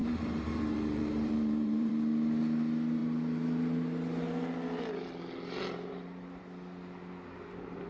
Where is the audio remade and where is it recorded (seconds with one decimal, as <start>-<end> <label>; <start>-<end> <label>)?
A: 0.0-1.9 remade; 1.9-7.9 recorded